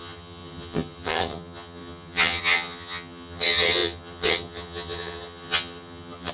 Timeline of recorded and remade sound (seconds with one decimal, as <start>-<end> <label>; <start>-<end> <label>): 0.0-6.3 remade